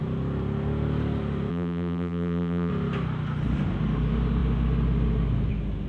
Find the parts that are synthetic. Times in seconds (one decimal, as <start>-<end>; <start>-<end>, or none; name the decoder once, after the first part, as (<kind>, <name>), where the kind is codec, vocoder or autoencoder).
1.5-2.7 (vocoder, BigVGAN v2)